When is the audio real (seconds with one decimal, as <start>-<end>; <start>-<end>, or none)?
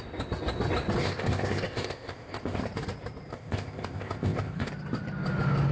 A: 0.0-1.0; 2.6-3.3; 4.7-5.7